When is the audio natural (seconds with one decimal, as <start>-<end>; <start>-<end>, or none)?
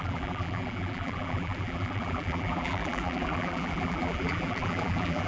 none